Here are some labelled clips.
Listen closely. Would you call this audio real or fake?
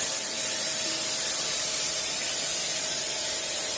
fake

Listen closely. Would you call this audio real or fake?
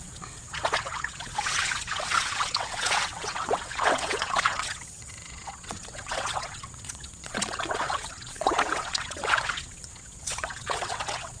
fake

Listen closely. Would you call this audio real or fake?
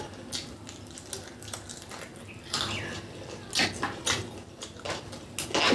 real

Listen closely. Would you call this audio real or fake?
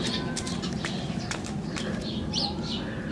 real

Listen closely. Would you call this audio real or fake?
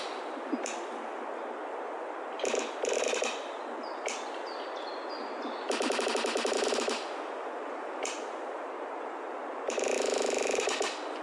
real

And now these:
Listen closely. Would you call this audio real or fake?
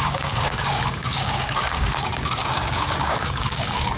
fake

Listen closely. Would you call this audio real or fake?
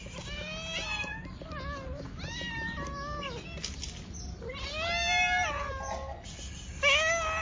real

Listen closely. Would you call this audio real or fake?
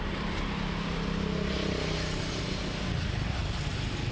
real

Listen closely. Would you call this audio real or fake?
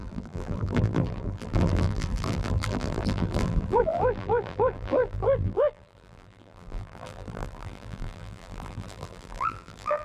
fake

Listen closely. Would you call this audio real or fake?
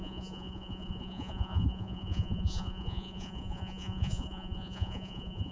fake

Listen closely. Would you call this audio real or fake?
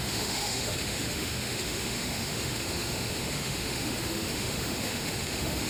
fake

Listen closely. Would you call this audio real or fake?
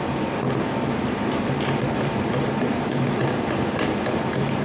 real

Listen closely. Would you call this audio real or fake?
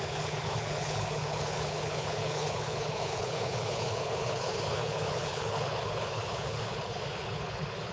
fake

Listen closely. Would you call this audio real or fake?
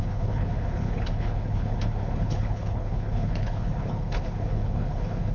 fake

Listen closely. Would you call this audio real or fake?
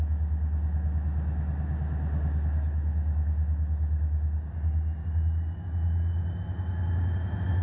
real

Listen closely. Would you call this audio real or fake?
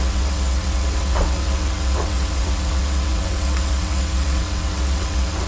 fake